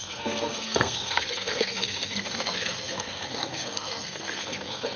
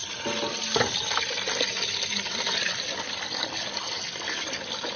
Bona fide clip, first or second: second